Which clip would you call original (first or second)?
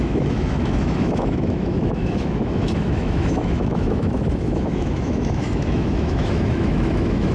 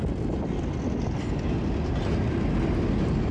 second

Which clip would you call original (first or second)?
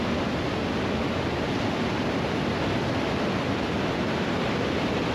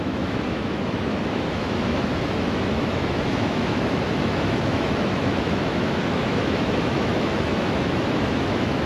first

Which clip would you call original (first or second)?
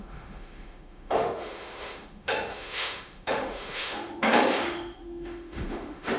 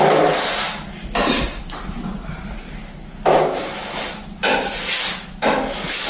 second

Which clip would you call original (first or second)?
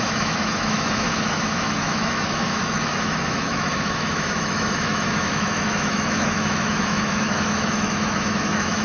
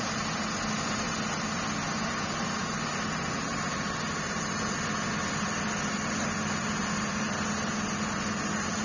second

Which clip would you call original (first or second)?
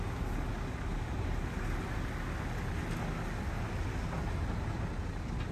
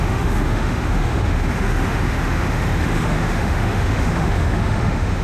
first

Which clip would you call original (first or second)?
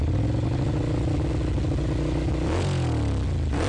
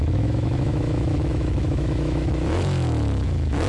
first